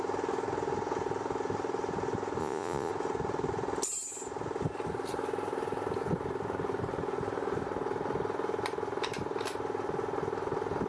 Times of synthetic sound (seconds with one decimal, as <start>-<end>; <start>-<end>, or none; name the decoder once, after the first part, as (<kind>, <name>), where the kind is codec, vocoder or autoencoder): 2.4-2.9 (vocoder, Vocos)